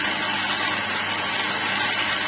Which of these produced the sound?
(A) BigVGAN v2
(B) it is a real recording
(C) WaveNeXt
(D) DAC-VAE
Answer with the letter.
B